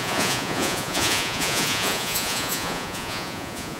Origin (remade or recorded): remade